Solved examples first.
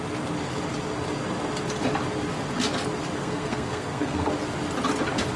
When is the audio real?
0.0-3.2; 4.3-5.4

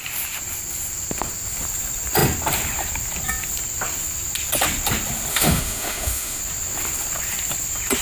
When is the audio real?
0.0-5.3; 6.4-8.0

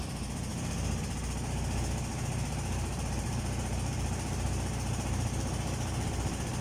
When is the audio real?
0.0-0.5; 1.0-2.1; 6.1-6.6

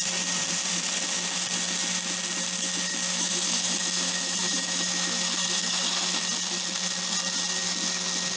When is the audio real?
0.0-2.9; 6.2-8.4

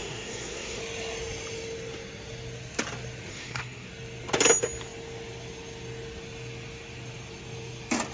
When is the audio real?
0.8-3.3; 3.9-8.1

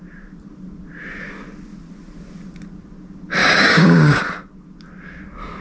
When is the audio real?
0.0-3.4; 4.2-5.6